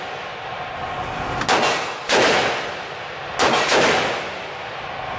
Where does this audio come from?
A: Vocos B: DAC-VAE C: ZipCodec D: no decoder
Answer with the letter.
D